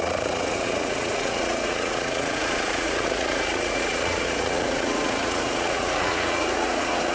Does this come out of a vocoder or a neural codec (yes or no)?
yes